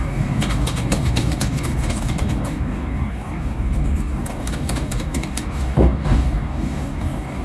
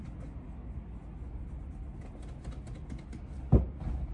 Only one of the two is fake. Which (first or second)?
first